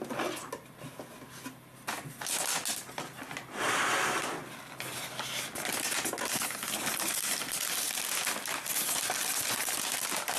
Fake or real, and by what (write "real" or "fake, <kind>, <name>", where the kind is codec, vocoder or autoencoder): real